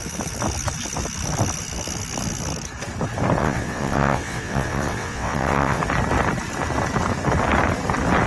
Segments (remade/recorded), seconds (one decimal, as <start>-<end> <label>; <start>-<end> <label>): 0.0-3.4 recorded; 3.4-5.8 remade; 5.8-8.3 recorded